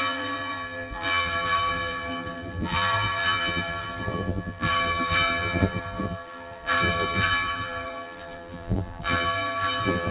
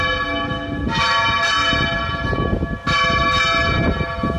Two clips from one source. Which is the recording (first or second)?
second